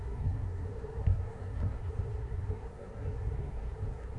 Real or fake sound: fake